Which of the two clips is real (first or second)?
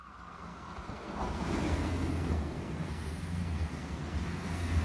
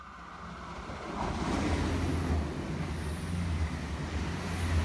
second